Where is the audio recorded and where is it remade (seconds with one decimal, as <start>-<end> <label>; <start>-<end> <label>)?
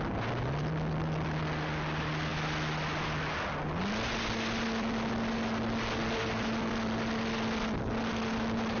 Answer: 0.0-8.8 recorded